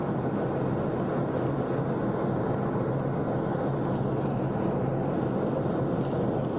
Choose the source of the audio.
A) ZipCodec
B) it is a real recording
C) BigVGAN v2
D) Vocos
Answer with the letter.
B